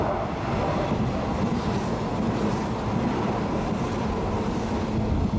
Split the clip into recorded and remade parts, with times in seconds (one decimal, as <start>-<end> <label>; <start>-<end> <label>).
0.0-5.4 recorded